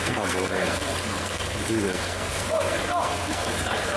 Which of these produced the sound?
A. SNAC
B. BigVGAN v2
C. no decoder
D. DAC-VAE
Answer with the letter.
A